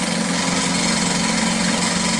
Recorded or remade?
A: recorded